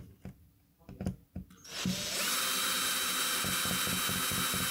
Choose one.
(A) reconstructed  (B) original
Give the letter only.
B